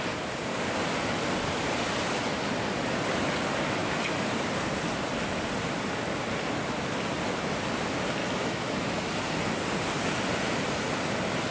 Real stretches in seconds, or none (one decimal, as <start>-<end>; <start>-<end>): 0.0-8.2; 9.1-11.5